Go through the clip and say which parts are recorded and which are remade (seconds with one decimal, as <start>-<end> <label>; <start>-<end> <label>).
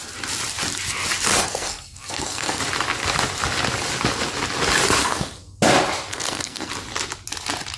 0.0-1.4 recorded; 1.4-2.6 remade; 2.6-5.0 recorded; 5.0-5.6 remade; 5.6-6.1 recorded; 6.1-6.7 remade; 6.7-7.8 recorded